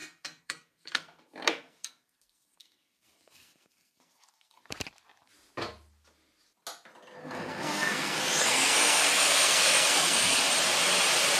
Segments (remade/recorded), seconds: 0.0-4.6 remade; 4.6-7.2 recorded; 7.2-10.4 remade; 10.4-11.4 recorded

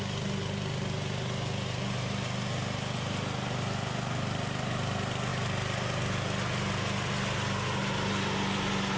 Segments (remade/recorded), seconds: 0.0-9.0 recorded

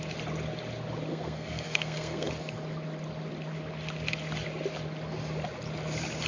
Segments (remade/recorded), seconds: 0.0-1.1 recorded; 1.1-2.3 remade; 2.3-6.3 recorded

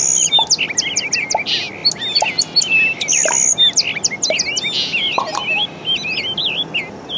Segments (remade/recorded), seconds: 0.0-7.2 recorded

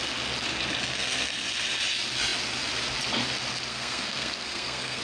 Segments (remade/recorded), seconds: 0.0-0.9 recorded; 0.9-1.4 remade; 1.4-3.7 recorded; 3.7-5.0 remade